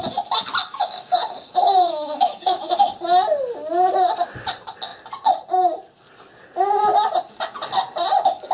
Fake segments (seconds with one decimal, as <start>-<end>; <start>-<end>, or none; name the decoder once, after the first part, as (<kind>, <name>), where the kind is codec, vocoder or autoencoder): 0.6-2.6 (codec, DAC)